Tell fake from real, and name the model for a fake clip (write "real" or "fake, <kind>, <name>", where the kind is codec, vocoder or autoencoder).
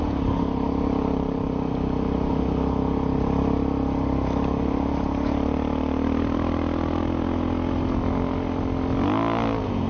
real